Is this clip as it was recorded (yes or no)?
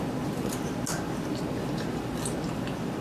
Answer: yes